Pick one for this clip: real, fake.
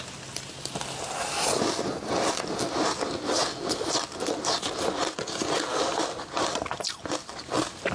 real